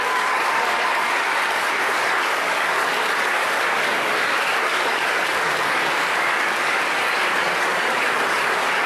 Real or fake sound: fake